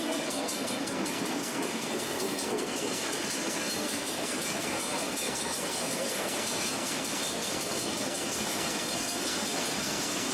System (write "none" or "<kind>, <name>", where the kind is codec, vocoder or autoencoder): codec, SNAC